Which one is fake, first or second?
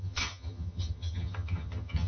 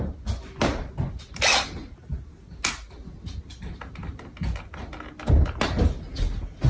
first